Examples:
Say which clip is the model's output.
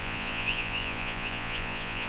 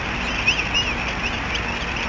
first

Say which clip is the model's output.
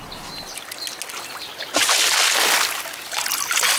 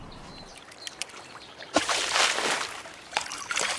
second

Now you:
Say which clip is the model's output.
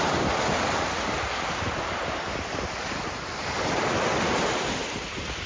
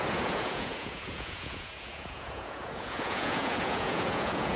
second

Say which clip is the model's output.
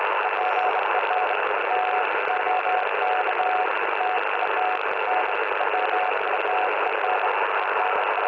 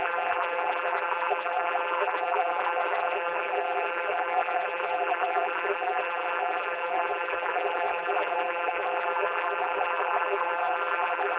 second